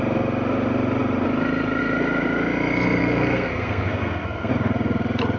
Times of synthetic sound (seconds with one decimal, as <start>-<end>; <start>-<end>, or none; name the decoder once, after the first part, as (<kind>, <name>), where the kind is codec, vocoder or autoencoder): 3.0-4.5 (codec, SNAC)